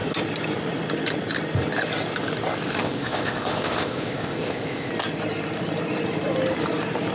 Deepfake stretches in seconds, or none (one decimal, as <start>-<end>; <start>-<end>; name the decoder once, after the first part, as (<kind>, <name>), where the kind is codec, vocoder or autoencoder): 2.7-4.9 (codec, ZipCodec)